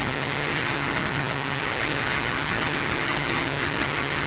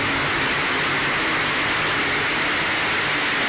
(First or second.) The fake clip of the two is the first